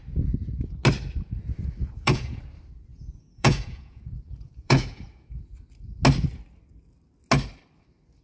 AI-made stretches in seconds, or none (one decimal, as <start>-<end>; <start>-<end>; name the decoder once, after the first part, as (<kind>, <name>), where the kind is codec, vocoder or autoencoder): 1.8-2.4 (vocoder, Vocos); 2.9-5.5